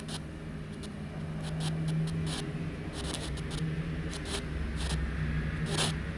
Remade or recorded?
recorded